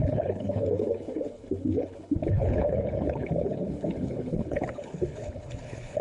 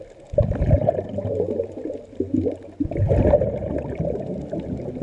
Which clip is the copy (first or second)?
first